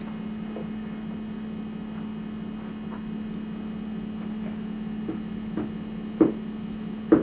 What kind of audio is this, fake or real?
real